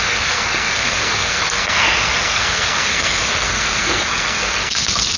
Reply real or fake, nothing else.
fake